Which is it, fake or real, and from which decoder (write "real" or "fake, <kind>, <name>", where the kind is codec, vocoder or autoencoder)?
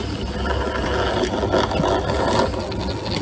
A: real